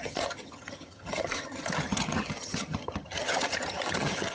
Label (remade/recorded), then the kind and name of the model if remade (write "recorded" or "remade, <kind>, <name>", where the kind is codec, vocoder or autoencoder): remade, vocoder, HiFi-GAN